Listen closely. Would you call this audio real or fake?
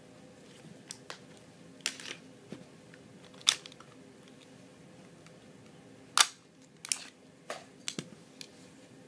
real